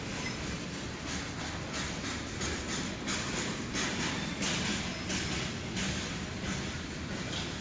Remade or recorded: recorded